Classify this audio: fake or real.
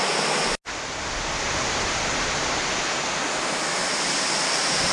real